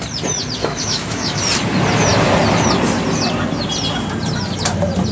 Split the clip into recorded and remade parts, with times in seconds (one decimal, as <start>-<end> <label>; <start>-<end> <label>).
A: 0.0-0.6 recorded; 0.6-1.4 remade; 1.4-5.1 recorded